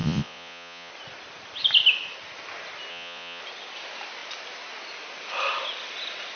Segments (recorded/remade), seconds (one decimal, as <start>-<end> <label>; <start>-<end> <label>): 0.0-0.9 remade; 0.9-2.9 recorded; 2.9-3.4 remade; 3.4-6.4 recorded